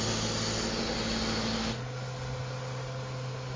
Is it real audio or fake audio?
real